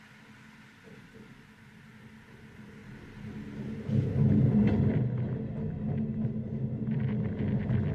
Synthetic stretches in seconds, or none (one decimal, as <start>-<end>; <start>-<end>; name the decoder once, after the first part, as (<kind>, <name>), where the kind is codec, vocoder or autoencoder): none